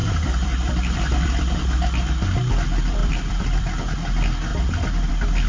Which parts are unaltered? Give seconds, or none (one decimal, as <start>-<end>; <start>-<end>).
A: 1.6-3.0; 3.8-4.5; 5.1-5.5